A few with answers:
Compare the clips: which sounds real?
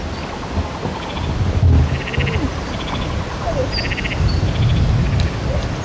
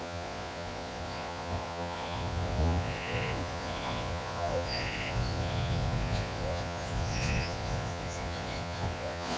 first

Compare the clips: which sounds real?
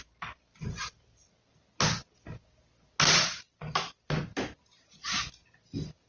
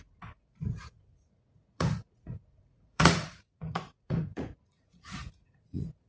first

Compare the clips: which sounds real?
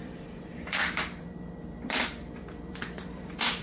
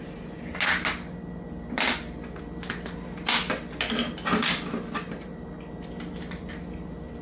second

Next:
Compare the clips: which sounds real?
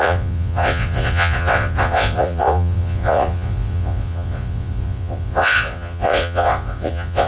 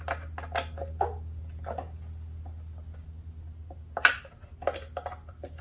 second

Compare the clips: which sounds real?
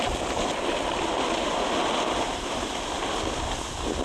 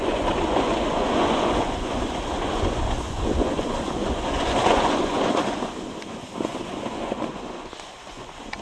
first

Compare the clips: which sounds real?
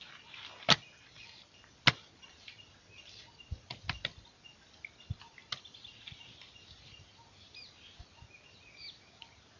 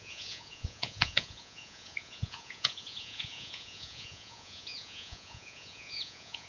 first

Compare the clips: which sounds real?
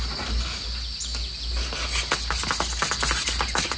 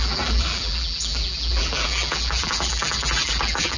first